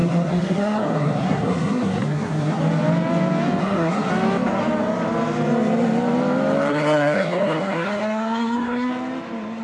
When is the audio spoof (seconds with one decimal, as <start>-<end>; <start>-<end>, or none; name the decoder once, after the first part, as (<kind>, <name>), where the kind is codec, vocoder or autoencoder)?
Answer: 0.0-2.6 (codec, SNAC); 3.6-4.1; 6.7-8.9